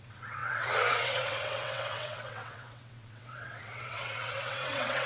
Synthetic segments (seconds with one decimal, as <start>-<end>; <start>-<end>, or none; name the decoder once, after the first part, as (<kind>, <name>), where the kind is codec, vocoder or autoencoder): 0.0-5.1 (vocoder, WaveNeXt)

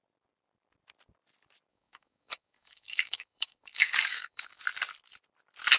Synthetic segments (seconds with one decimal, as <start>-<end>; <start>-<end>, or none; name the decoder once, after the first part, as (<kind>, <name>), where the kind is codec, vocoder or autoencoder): 1.7-4.6 (codec, DAC)

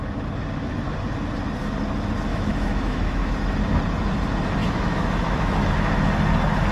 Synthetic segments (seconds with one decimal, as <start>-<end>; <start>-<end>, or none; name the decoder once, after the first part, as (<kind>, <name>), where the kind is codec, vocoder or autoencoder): 2.3-3.3 (autoencoder, DAC-VAE); 4.6-6.0

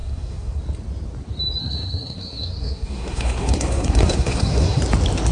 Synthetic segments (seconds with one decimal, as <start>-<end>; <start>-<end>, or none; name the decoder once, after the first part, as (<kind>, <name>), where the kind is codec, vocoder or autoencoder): 0.0-0.6 (codec, SNAC); 1.6-4.8

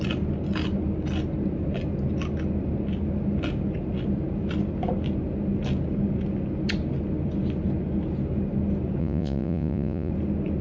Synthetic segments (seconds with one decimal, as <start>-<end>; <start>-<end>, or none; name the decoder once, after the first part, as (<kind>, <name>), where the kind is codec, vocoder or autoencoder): 9.0-10.1 (vocoder, Vocos)

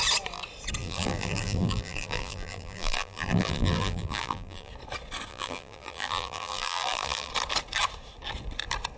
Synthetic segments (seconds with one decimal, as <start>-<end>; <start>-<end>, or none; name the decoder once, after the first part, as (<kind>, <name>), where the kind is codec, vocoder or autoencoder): 0.8-4.7 (vocoder, BigVGAN v2); 5.3-7.3